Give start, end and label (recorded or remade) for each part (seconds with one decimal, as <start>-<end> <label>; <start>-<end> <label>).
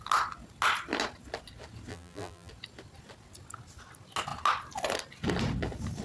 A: 0.0-1.9 recorded; 1.9-2.5 remade; 2.5-6.0 recorded